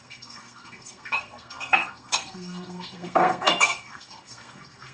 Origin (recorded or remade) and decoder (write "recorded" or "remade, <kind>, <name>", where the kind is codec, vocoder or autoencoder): remade, codec, SNAC